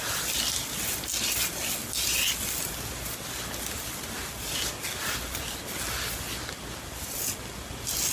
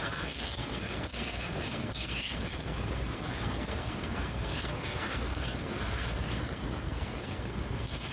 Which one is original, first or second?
first